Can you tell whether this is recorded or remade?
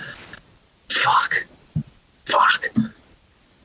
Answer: recorded